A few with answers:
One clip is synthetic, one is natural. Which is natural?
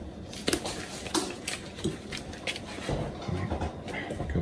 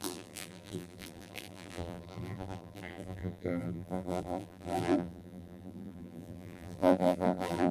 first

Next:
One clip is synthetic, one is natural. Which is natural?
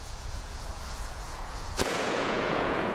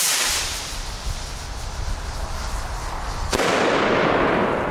second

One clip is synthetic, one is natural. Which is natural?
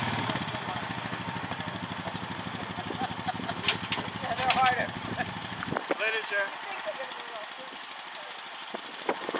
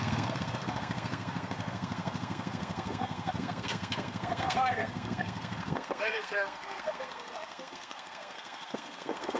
first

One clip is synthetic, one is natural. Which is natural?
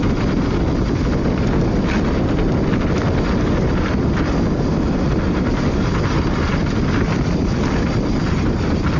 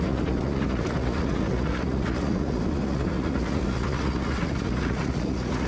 first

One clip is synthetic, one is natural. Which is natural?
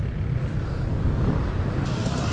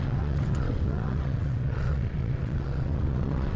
first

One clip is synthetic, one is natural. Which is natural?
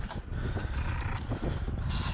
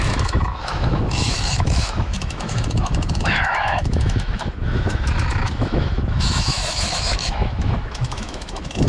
first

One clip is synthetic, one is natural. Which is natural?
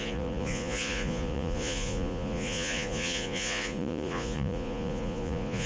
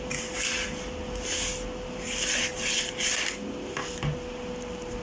second